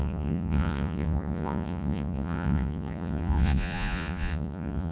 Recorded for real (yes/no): no